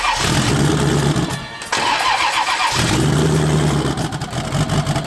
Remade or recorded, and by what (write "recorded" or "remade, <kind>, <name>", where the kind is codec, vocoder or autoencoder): recorded